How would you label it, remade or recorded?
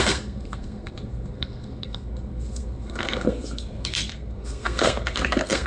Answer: remade